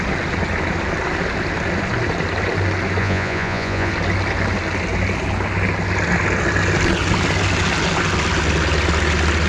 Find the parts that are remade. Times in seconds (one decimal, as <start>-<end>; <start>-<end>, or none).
3.0-3.9